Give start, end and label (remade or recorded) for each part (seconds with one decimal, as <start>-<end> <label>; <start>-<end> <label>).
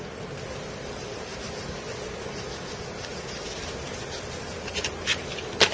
0.0-5.7 recorded